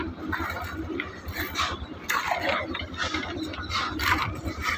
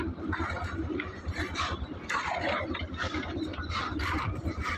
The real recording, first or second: first